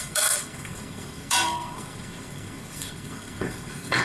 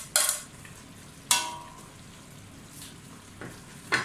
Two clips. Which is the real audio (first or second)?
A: second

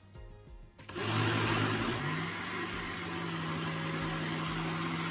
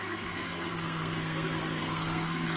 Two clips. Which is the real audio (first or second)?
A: first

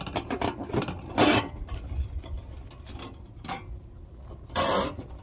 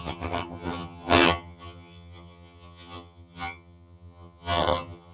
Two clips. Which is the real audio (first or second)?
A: first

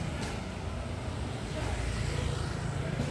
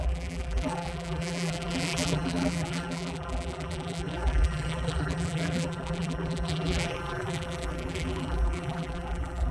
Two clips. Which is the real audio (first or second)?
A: first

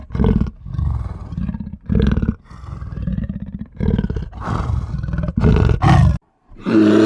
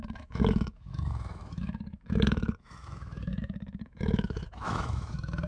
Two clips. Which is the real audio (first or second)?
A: first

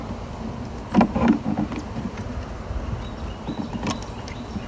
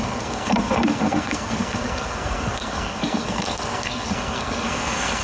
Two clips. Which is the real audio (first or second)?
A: first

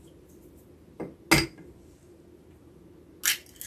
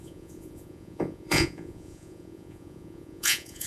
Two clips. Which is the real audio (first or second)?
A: first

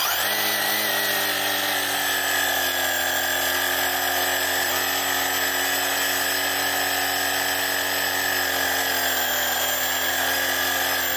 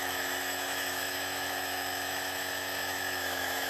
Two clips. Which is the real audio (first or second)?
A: first